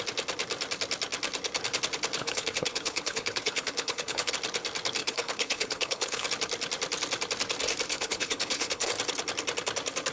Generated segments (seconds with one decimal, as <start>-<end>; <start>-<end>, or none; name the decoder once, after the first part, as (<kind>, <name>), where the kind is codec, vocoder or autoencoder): 2.2-4.3 (codec, HILCodec); 5.0-6.3; 7.9-8.9